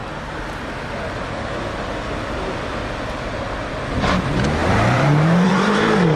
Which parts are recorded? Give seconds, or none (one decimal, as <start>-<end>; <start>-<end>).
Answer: 0.0-3.7